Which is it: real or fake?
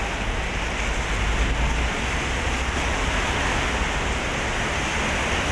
real